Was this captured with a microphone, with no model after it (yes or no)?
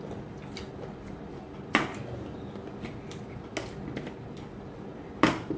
yes